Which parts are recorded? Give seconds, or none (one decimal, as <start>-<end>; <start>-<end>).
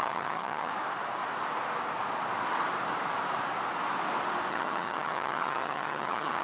0.7-4.5